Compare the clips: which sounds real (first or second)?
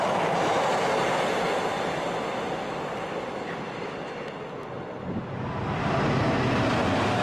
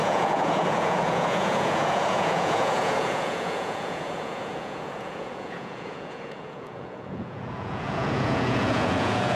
first